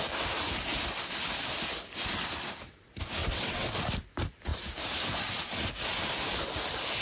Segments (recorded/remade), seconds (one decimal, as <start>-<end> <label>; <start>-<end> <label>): 0.0-3.2 recorded; 3.2-3.7 remade; 3.7-7.0 recorded